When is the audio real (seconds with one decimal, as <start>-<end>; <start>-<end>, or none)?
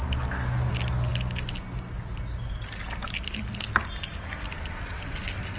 0.0-5.6